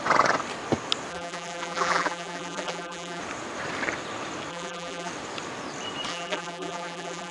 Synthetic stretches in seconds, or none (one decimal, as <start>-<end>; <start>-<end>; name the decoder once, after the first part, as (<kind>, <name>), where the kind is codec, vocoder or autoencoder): 1.1-3.2 (vocoder, BigVGAN v2); 4.5-5.1; 6.1-7.3